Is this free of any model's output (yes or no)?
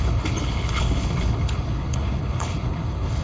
no